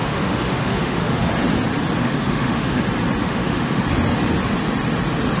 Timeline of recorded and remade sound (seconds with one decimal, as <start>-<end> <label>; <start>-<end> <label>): 0.0-1.3 remade; 1.3-2.0 recorded; 2.0-2.8 remade; 2.8-3.2 recorded; 3.2-3.8 remade; 3.8-5.4 recorded